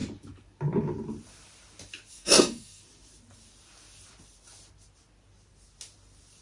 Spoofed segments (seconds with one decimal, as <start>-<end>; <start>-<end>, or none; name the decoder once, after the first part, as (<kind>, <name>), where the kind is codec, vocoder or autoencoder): 2.1-2.8 (codec, SNAC)